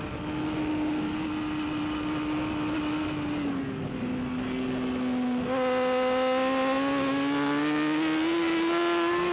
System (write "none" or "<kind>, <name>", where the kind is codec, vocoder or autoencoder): none